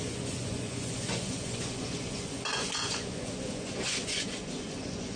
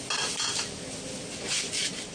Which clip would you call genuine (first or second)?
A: second